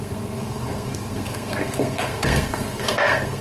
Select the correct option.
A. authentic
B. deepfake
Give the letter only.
B